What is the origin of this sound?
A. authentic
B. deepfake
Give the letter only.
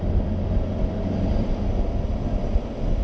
B